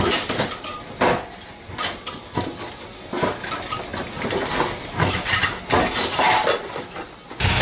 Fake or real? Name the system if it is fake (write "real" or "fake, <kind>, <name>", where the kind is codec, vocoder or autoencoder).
real